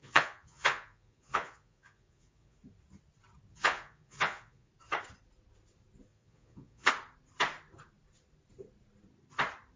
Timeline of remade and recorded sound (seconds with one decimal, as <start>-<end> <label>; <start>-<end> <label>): 0.0-2.6 remade; 2.6-3.5 recorded; 3.5-4.7 remade; 4.7-6.1 recorded; 6.1-6.9 remade; 6.9-9.8 recorded